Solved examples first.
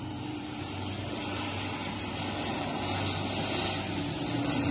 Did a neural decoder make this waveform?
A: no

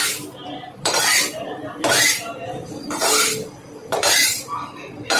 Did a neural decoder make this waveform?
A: yes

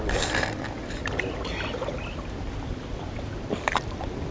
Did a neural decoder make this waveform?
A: no